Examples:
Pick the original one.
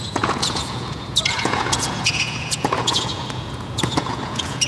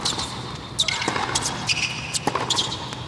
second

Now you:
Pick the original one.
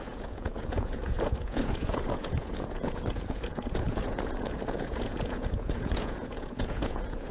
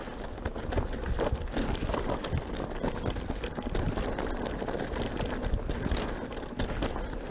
second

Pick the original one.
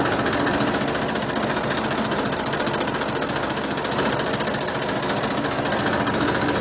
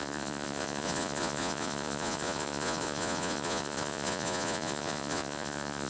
first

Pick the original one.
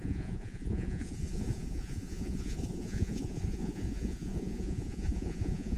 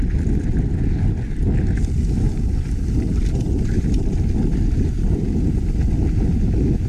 second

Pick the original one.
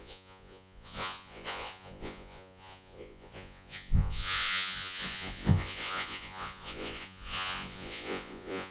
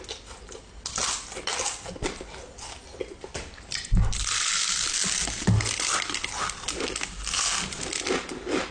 second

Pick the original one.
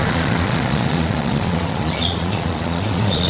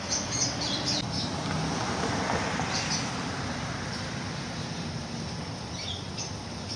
second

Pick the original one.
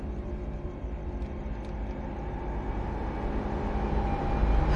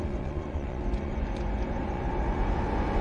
first